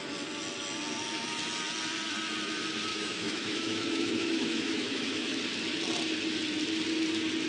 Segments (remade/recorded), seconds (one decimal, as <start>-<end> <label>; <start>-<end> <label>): 0.0-2.9 recorded; 2.9-5.4 remade; 5.4-7.5 recorded